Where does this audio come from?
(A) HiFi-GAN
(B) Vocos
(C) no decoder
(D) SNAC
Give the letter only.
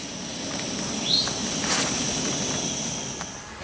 C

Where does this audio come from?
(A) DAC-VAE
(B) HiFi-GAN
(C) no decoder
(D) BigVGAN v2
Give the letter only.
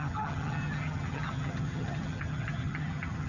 B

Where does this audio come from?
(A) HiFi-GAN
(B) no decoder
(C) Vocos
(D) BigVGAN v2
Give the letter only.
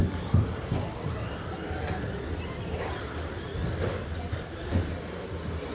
B